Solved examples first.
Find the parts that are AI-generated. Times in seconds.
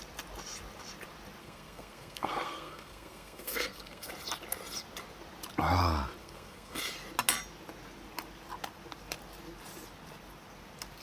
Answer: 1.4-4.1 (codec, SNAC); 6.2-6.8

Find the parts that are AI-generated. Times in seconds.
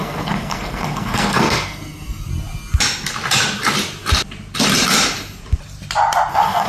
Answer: 0.0-2.3 (codec, SNAC); 6.3-6.7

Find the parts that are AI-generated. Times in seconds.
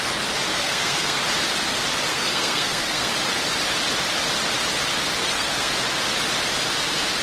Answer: 0.5-1.2 (codec, SNAC); 2.1-3.1; 5.2-5.7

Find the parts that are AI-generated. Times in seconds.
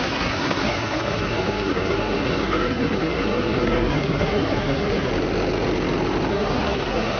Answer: 0.0-5.1 (codec, SNAC); 6.3-7.2